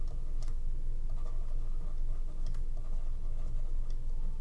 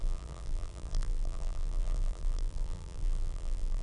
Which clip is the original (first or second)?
first